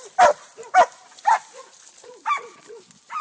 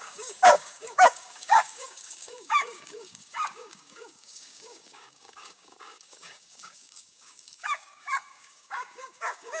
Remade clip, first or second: second